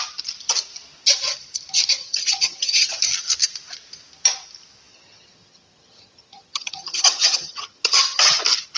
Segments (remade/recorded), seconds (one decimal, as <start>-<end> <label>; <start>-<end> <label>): 0.0-2.0 recorded; 2.0-3.0 remade; 3.0-4.9 recorded; 4.9-8.4 remade; 8.4-8.8 recorded